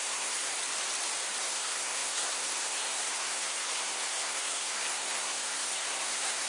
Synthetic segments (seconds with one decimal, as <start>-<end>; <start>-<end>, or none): 0.0-0.5; 1.4-6.5